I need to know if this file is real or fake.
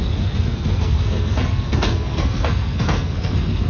fake